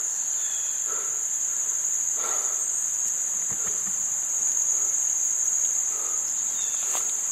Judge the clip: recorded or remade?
recorded